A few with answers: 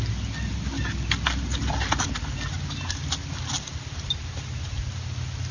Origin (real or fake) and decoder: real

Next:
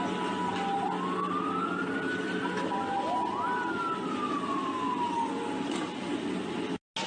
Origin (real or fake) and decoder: real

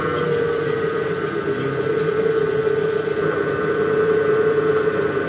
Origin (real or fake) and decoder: fake, vocoder, BigVGAN v2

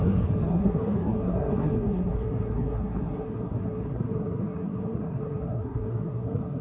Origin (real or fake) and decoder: fake, codec, SNAC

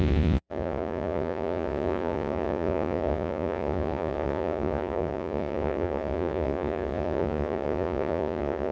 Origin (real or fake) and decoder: fake, vocoder, Vocos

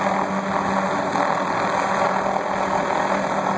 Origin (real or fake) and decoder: real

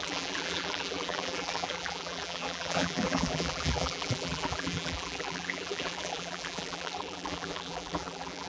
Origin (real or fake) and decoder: fake, vocoder, BigVGAN v2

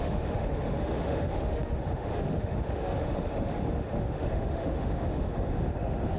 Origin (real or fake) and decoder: fake, autoencoder, DAC-VAE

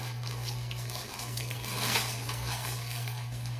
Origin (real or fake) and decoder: fake, codec, SNAC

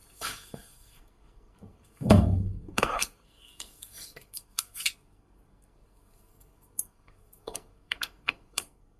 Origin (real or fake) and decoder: fake, codec, SNAC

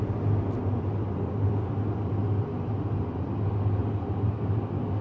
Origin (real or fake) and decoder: real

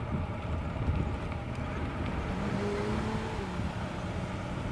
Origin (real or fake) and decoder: real